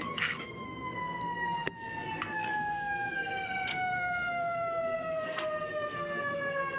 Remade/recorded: remade